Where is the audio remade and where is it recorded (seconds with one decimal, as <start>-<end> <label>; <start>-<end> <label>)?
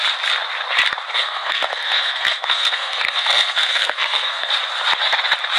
0.0-1.1 recorded; 1.1-4.5 remade; 4.5-5.6 recorded